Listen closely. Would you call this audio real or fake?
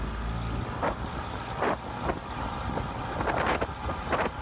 real